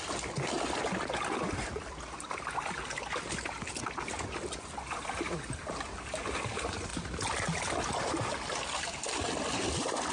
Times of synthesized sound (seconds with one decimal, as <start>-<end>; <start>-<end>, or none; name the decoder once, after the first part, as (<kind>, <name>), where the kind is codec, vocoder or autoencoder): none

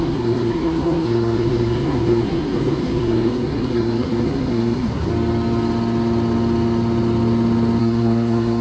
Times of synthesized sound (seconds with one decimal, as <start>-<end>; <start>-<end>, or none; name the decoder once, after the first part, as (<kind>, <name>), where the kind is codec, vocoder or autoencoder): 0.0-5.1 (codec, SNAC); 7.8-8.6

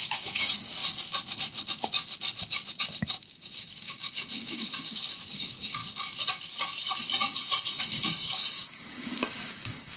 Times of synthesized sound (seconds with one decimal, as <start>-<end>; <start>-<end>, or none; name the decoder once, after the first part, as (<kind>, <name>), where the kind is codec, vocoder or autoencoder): 0.0-0.8 (codec, DAC); 2.8-5.8; 7.8-10.0

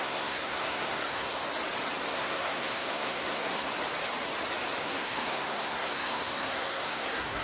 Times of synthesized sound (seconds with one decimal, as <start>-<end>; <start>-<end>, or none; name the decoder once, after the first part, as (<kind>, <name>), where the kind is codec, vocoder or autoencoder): 0.0-1.4 (codec, SNAC); 2.1-3.7; 4.8-7.4